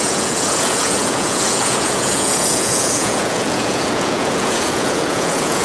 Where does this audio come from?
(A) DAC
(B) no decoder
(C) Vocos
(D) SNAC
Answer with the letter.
C